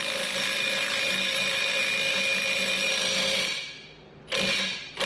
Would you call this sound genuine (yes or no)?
yes